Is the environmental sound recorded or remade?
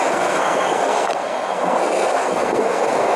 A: remade